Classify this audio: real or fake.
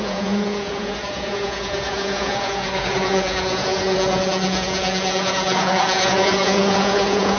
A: fake